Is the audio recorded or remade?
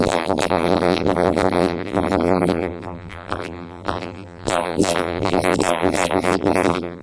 remade